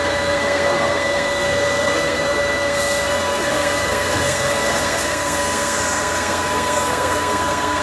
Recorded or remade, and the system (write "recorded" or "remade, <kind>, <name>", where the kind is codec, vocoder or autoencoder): remade, codec, SNAC